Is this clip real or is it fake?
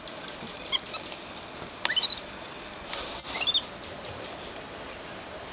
real